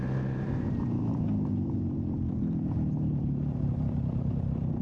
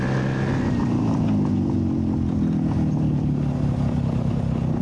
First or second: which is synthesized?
first